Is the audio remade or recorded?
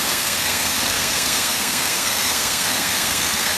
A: remade